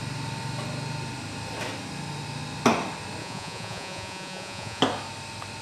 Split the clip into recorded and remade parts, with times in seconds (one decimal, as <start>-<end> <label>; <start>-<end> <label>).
0.0-3.2 recorded; 3.2-4.8 remade; 4.8-5.6 recorded